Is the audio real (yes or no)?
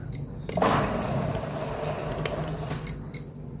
yes